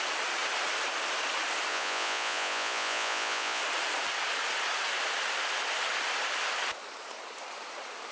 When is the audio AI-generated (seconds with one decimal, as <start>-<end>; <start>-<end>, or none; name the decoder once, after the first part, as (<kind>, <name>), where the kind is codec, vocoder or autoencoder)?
1.7-3.6 (vocoder, Vocos)

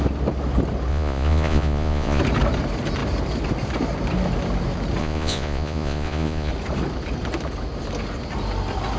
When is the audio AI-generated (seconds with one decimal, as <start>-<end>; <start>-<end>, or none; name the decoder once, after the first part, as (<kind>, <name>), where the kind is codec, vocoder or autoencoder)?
0.9-2.2 (vocoder, Vocos); 5.0-6.5

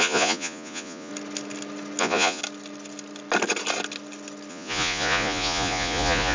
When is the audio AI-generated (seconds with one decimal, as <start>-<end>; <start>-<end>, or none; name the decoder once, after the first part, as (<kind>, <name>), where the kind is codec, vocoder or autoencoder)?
0.0-1.1 (vocoder, Vocos); 2.0-2.4; 4.5-6.3

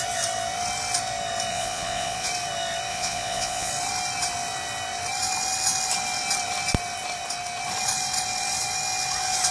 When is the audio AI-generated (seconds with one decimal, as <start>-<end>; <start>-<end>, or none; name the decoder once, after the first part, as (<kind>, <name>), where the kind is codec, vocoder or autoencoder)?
1.5-2.3 (vocoder, Vocos); 2.9-3.7

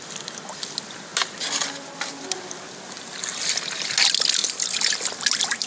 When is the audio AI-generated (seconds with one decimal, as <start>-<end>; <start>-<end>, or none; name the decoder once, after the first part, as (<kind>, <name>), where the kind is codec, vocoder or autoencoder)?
none

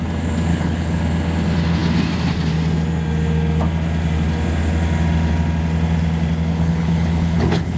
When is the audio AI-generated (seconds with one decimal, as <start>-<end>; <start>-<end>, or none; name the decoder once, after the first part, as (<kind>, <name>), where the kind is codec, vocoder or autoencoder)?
0.5-1.0 (codec, HILCodec); 6.5-7.8

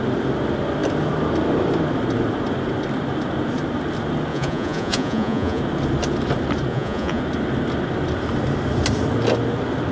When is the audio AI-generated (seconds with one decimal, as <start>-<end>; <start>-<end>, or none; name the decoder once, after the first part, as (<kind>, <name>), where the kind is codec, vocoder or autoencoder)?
4.3-5.6 (vocoder, Vocos); 6.7-7.2